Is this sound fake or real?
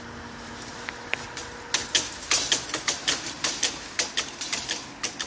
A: real